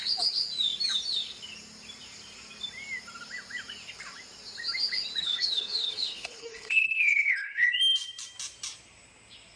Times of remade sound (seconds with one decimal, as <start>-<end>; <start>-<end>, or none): 5.2-7.7